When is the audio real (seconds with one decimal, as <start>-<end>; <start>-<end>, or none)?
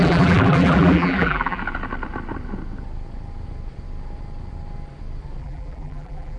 1.6-5.4